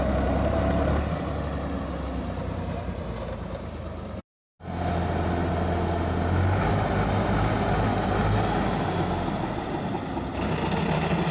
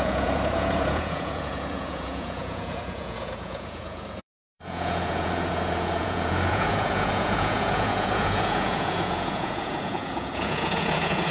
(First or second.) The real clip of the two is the first